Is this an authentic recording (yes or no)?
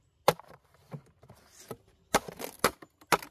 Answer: yes